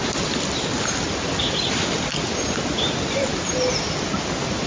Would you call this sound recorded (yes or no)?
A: yes